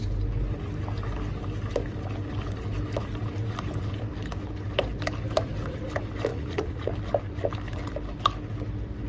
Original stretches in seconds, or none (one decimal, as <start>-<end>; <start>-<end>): 0.0-6.3; 6.9-9.1